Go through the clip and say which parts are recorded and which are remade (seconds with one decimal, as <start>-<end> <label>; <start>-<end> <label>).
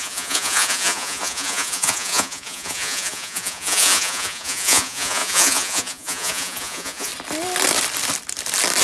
0.0-7.1 remade; 7.1-8.8 recorded